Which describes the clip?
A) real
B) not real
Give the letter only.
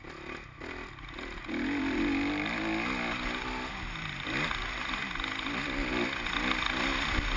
A